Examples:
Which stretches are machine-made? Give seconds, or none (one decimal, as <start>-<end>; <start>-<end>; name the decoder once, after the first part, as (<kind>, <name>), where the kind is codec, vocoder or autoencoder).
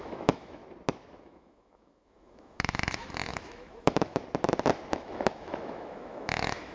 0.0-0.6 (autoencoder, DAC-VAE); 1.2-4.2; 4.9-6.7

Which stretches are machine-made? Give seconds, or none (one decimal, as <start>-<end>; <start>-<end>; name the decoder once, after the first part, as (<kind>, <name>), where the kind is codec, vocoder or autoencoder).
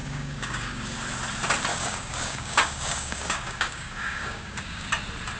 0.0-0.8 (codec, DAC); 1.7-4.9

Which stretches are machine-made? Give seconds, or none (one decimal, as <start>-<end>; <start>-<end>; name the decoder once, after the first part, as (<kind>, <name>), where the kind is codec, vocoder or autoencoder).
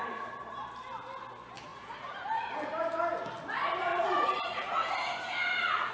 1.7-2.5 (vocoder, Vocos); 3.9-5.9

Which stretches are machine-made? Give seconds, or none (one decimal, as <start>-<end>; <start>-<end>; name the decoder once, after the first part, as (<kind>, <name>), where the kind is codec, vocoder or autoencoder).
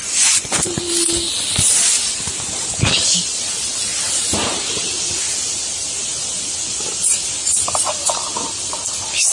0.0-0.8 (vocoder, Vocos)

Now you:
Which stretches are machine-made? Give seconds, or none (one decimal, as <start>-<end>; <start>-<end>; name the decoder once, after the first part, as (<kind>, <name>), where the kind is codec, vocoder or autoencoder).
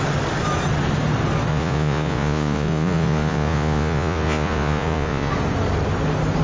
1.5-5.3 (vocoder, Vocos)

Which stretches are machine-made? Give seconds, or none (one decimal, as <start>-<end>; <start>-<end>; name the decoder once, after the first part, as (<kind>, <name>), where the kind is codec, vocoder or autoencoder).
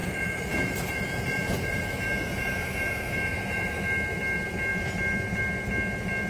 0.0-3.8 (vocoder, Vocos)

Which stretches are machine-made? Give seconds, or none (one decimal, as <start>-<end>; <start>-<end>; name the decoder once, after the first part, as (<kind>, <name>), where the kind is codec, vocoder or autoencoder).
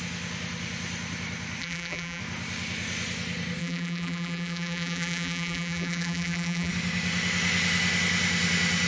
1.6-2.2 (vocoder, BigVGAN v2); 3.6-6.7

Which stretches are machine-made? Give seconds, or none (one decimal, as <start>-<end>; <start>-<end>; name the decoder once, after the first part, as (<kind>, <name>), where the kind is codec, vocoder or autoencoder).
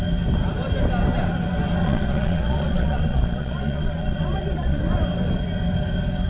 1.8-4.8 (vocoder, Vocos)